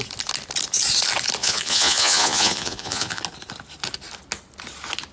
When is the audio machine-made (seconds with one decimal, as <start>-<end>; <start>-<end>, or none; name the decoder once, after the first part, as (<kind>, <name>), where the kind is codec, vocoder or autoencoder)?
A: 1.4-3.2 (vocoder, Vocos)